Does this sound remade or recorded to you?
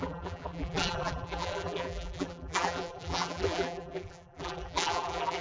remade